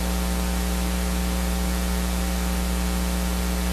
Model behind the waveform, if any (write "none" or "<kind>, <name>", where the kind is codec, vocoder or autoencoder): none